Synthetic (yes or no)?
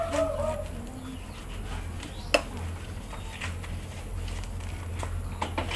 no